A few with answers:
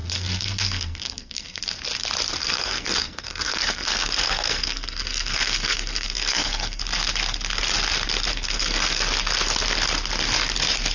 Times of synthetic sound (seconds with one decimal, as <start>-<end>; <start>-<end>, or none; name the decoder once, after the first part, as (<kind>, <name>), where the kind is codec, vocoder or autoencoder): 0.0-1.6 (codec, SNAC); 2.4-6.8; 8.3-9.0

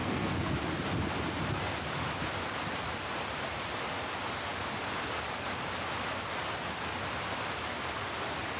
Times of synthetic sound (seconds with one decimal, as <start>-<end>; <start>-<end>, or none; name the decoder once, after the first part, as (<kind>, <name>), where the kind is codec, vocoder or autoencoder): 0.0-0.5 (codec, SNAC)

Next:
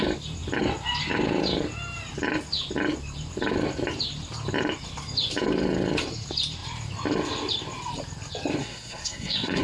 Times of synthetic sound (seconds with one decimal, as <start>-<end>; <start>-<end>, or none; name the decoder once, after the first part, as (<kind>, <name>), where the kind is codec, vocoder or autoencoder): 8.6-9.6 (codec, SNAC)

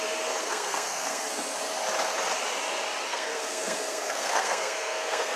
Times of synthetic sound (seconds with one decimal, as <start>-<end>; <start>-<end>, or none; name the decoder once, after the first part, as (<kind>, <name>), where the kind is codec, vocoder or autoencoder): 0.4-1.2 (codec, SNAC); 3.1-5.4

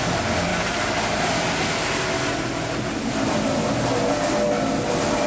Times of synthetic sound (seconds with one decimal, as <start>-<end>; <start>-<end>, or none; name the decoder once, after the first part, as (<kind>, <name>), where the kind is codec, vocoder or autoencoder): none

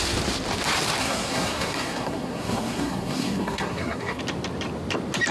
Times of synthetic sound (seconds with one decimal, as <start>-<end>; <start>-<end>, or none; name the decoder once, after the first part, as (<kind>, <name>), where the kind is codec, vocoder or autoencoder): 1.0-4.2 (codec, SNAC)

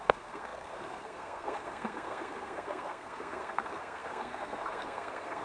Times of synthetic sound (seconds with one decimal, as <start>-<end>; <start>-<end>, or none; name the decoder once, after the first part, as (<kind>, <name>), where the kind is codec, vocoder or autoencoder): 0.0-5.4 (codec, SNAC)